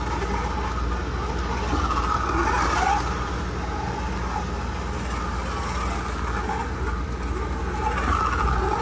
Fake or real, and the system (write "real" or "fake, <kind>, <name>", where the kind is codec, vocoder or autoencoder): real